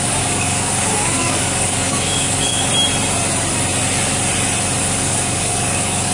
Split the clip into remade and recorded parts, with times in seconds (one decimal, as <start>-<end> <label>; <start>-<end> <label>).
0.0-2.7 remade; 2.7-4.8 recorded; 4.8-6.1 remade